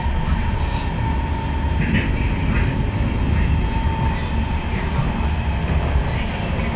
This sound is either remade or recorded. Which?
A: recorded